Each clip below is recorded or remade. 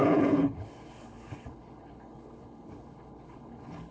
remade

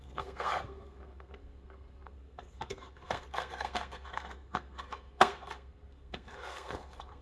remade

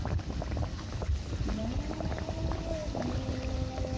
recorded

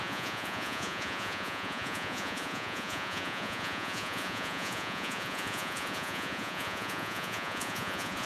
remade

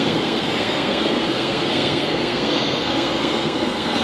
remade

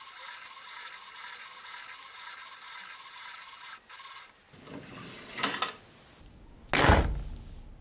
recorded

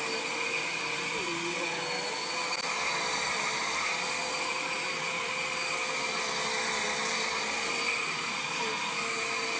recorded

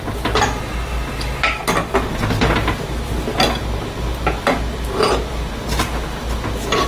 recorded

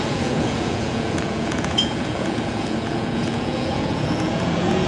remade